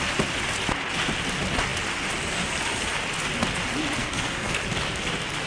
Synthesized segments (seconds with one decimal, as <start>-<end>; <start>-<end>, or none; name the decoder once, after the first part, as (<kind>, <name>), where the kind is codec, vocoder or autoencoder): 4.0-4.6 (codec, SNAC)